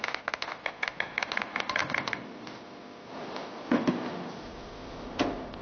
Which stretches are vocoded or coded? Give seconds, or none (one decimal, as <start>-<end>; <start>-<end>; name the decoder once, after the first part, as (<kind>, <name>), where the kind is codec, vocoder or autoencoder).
none